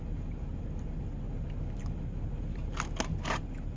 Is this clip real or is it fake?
real